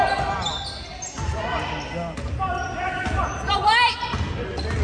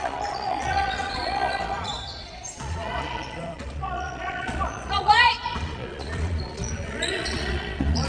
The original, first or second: first